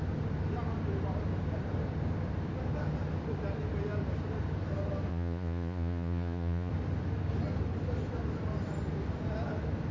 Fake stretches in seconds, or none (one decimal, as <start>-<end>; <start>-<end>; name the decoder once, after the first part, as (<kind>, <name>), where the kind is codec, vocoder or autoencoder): 5.1-6.7 (vocoder, Vocos)